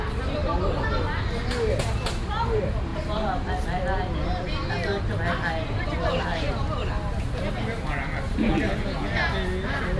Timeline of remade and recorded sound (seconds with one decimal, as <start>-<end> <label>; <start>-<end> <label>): 0.0-10.0 recorded